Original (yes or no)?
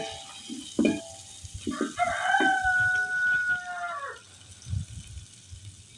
yes